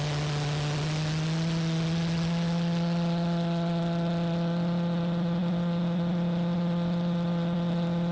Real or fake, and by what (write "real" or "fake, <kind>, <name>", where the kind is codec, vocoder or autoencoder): real